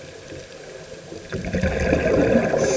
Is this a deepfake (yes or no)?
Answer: no